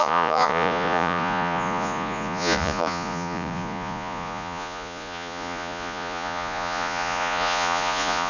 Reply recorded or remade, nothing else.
remade